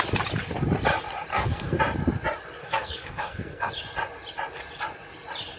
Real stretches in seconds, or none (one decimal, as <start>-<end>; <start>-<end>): 0.0-1.3; 1.8-2.6; 3.7-5.6

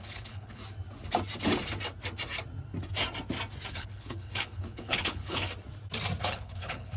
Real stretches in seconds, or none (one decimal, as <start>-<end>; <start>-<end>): 0.6-3.7; 5.4-6.2

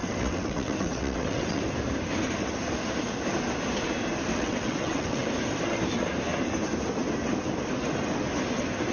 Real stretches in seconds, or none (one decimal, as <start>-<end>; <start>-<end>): 1.6-4.3; 5.3-8.9

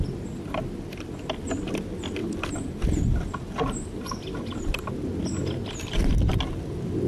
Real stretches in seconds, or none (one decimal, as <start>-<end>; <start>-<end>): 0.0-2.2; 4.9-7.1

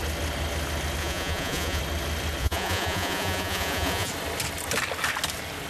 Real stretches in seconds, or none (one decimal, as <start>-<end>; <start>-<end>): 0.0-1.0; 1.8-2.4; 4.1-5.7

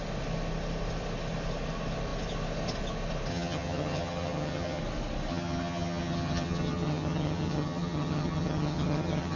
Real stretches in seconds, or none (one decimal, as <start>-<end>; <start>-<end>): 0.0-3.3; 4.8-5.3

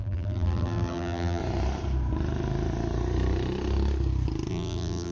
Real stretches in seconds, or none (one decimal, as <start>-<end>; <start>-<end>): 1.4-4.5

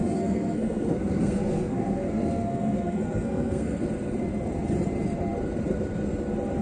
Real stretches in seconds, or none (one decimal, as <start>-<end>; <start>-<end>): 3.8-6.6